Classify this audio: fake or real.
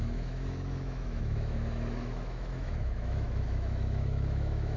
fake